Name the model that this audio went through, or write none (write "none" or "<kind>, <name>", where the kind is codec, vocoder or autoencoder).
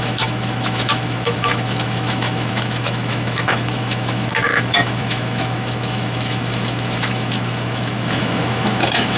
autoencoder, DAC-VAE